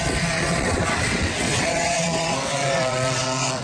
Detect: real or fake fake